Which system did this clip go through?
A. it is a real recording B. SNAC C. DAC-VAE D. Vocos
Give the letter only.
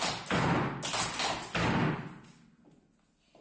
A